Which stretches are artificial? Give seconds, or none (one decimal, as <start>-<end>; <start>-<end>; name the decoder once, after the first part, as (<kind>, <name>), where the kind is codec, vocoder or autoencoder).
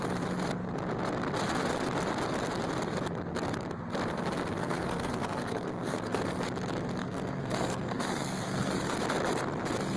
4.6-6.2 (codec, SNAC); 7.0-8.8